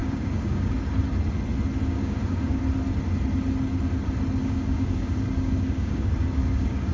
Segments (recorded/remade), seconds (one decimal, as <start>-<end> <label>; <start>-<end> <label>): 0.0-0.9 remade; 0.9-1.8 recorded; 1.8-2.6 remade; 2.6-4.4 recorded; 4.4-6.9 remade